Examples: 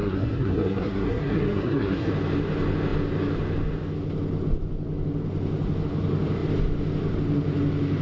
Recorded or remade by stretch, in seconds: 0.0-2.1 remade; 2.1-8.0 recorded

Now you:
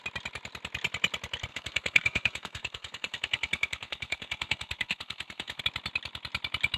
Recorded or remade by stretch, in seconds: 0.0-1.5 recorded; 1.5-5.6 remade; 5.6-6.8 recorded

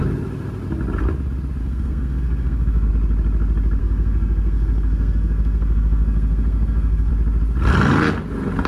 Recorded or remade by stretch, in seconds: 0.0-1.6 recorded; 1.6-2.9 remade; 2.9-3.8 recorded; 3.8-7.1 remade; 7.1-8.7 recorded

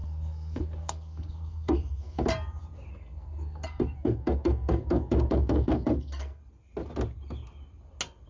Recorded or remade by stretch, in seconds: 0.0-2.3 remade; 2.3-2.9 recorded; 2.9-6.4 remade; 6.4-8.3 recorded

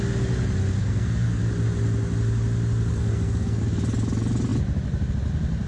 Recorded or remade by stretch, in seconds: 0.0-0.8 recorded; 0.8-1.4 remade; 1.4-2.9 recorded; 2.9-3.6 remade; 3.6-5.7 recorded